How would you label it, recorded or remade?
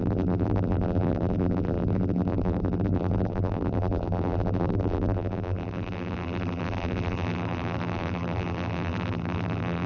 remade